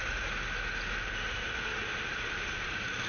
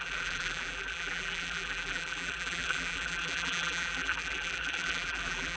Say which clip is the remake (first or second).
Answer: second